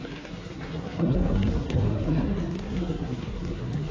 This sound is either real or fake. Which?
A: fake